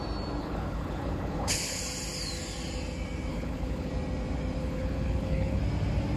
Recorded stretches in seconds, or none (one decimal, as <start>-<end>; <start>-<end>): 0.0-0.4; 1.8-3.3; 3.9-4.6; 5.6-6.2